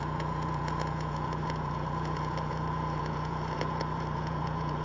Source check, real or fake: fake